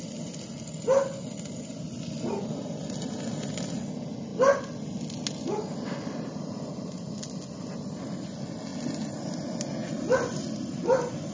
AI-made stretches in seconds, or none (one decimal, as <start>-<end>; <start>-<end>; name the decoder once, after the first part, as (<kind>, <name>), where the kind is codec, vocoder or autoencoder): none

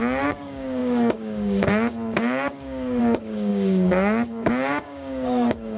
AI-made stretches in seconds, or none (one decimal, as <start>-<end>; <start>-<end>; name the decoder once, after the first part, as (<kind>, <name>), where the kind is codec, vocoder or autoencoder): 0.0-5.8 (codec, DAC)

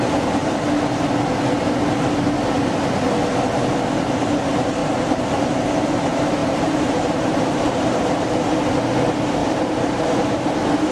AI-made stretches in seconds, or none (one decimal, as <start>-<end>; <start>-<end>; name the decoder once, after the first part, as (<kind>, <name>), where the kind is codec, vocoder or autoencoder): 4.8-5.8 (vocoder, BigVGAN v2); 6.4-8.4; 9.4-10.5

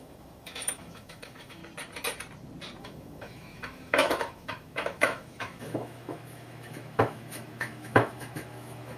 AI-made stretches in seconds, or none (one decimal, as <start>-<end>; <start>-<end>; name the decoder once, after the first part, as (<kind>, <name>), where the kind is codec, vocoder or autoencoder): 0.0-1.6 (autoencoder, DAC-VAE); 2.8-9.0

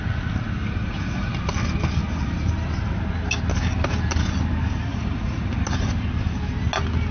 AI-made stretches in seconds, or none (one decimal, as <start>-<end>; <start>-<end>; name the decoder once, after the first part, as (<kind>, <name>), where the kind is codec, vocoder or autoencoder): 0.8-1.3 (vocoder, Vocos); 4.9-5.6

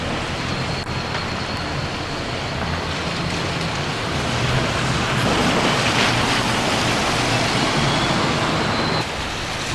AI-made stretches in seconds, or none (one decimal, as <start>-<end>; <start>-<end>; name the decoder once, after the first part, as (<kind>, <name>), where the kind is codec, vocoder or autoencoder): 1.8-4.4 (vocoder, BigVGAN v2)

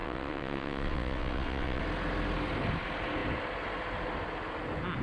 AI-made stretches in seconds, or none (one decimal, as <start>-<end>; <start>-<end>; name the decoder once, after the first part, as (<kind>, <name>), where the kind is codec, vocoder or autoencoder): 0.0-1.8 (vocoder, WaveNeXt)

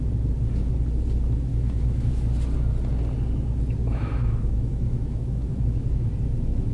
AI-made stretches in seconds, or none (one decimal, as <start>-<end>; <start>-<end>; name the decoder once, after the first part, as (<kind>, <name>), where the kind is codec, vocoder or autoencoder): 1.5-2.1 (autoencoder, DAC-VAE); 3.8-6.1